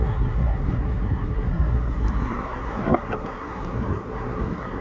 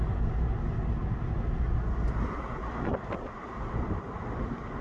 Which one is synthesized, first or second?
first